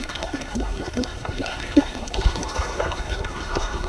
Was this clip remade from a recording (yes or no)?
yes